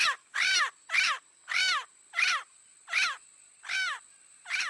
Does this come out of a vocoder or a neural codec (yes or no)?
no